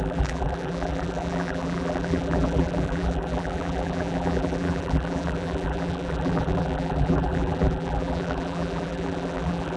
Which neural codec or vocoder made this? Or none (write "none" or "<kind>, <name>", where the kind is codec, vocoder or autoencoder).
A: vocoder, BigVGAN v2